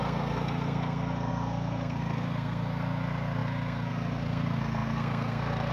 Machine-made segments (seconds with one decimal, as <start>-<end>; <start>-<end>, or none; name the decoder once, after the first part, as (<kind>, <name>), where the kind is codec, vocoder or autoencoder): 0.0-5.7 (codec, SNAC)